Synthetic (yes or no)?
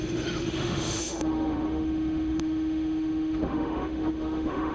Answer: yes